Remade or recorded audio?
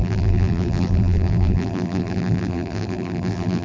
remade